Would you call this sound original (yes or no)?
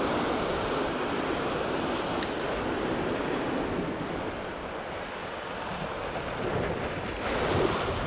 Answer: yes